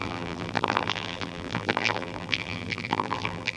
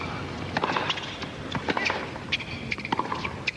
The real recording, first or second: second